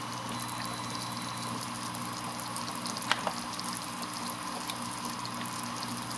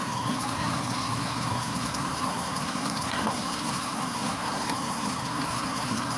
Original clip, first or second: first